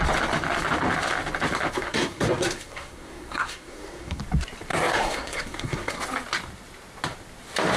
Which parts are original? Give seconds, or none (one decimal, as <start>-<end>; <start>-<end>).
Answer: 0.0-1.7; 4.2-4.7; 6.0-7.8